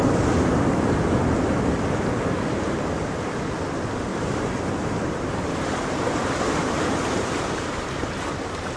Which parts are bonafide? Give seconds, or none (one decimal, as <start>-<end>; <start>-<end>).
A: 0.0-4.1